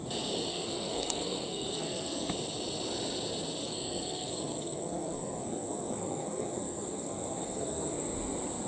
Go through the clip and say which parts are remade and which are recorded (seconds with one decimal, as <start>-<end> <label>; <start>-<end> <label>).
0.0-0.5 recorded; 0.5-2.3 remade; 2.3-3.6 recorded; 3.6-7.9 remade; 7.9-8.7 recorded